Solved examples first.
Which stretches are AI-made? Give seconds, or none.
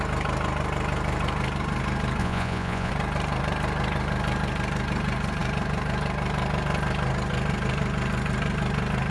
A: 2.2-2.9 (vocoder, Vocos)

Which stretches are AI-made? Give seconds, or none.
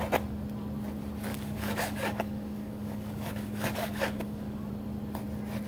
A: 1.3-4.7 (codec, DAC)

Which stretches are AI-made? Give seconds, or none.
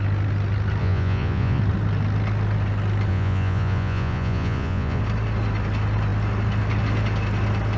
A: 0.8-1.6 (vocoder, Vocos); 3.1-5.0